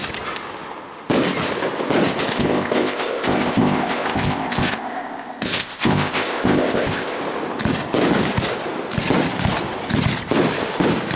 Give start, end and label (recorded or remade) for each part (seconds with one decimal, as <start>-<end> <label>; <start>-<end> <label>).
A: 0.0-2.3 recorded; 2.3-7.2 remade; 7.2-11.2 recorded